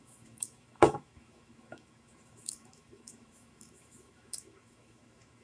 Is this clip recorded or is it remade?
remade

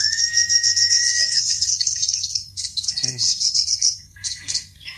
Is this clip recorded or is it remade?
remade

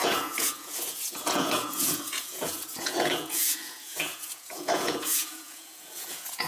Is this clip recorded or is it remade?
remade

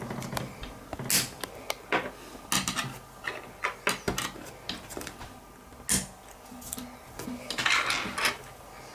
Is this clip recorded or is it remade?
recorded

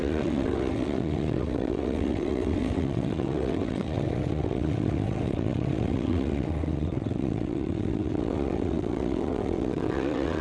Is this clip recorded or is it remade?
remade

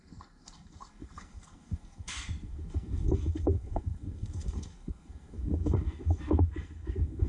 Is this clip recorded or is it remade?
remade